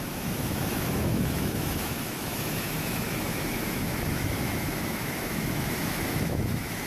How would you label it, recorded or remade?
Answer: remade